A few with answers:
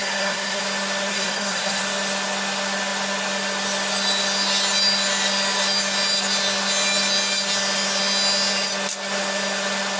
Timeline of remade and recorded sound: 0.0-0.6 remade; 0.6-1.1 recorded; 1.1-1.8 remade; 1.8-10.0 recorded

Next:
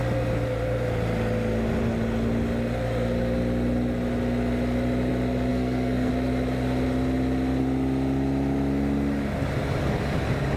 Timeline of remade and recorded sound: 0.0-5.5 recorded; 5.5-6.1 remade; 6.1-10.6 recorded

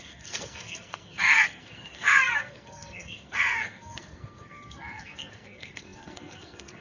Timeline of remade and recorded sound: 0.0-6.8 remade

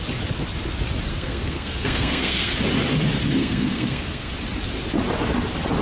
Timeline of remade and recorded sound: 0.0-1.1 recorded; 1.1-2.5 remade; 2.5-3.4 recorded; 3.4-4.3 remade; 4.3-5.8 recorded

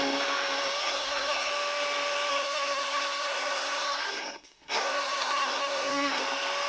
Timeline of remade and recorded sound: 0.0-0.8 recorded; 0.8-1.5 remade; 1.5-2.3 recorded; 2.3-6.2 remade; 6.2-6.7 recorded